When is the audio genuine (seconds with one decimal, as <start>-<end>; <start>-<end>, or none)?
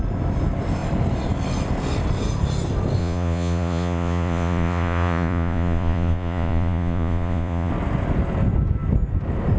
0.0-3.0; 7.7-9.6